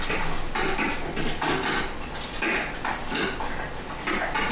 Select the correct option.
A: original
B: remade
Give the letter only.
A